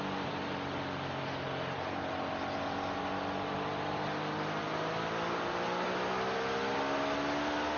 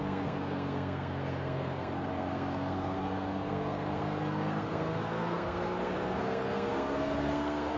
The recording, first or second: first